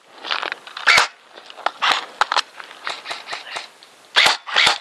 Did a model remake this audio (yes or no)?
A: no